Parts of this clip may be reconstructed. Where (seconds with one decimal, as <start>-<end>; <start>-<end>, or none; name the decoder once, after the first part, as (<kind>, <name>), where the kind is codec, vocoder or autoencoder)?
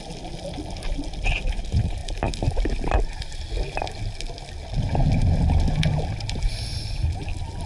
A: none